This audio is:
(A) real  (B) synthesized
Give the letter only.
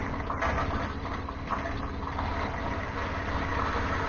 A